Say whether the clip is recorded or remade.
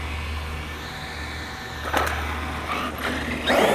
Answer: recorded